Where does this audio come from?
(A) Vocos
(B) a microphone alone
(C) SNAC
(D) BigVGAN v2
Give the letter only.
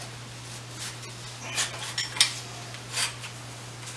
B